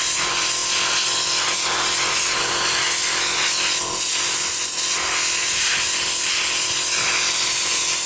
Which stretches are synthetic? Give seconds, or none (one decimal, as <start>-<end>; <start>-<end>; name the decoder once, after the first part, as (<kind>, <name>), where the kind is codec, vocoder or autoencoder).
none